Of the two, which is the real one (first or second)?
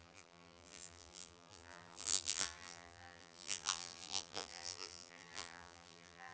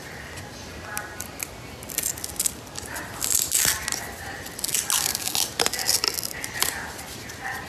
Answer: second